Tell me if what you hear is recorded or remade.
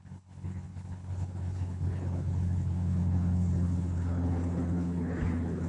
remade